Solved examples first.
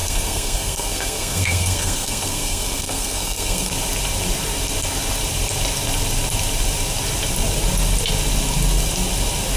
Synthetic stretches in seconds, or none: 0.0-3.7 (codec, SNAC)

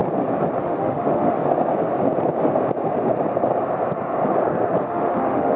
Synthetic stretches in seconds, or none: 0.6-1.4 (autoencoder, DAC-VAE); 4.8-5.6

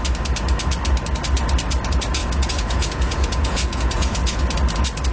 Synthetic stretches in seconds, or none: 2.2-4.4 (vocoder, Vocos)